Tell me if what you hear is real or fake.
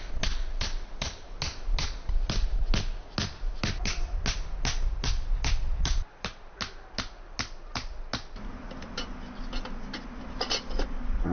real